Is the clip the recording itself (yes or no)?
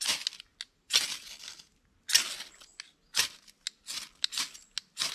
yes